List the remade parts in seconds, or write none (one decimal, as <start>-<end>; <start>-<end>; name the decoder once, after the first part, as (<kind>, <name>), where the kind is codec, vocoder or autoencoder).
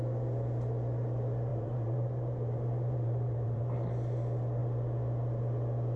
1.5-3.6 (vocoder, BigVGAN v2)